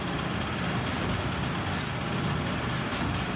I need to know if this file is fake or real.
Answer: real